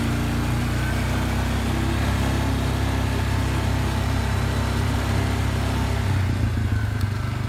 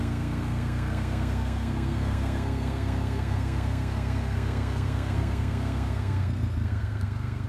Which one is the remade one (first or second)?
second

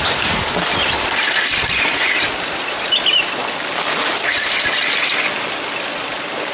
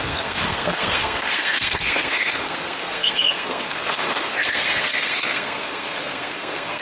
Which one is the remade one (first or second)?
second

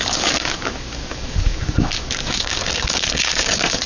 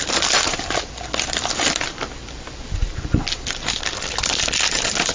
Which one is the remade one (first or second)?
first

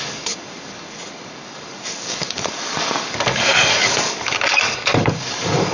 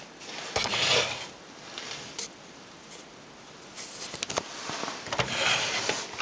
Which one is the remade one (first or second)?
first